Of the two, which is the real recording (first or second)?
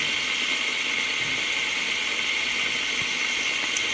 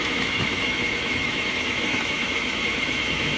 first